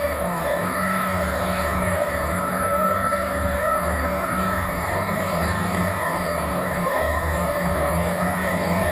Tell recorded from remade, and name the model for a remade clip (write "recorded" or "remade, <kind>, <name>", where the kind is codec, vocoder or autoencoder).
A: remade, codec, DAC